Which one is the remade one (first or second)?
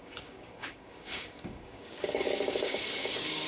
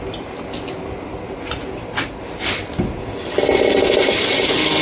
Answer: first